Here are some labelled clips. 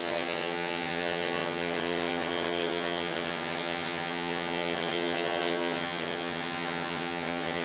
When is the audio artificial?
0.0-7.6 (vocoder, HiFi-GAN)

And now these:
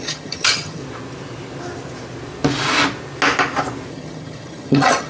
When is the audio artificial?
0.0-0.8 (vocoder, HiFi-GAN); 3.9-5.1